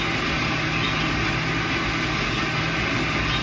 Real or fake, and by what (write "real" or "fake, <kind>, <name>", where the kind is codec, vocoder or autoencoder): real